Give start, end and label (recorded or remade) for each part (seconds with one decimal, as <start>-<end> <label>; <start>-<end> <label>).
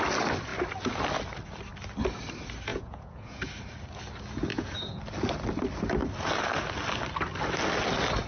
0.0-2.7 recorded; 2.7-3.5 remade; 3.5-4.5 recorded; 4.5-5.0 remade; 5.0-8.3 recorded